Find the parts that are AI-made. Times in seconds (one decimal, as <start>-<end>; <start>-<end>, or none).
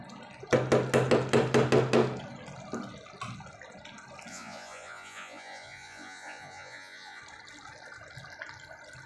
4.3-7.2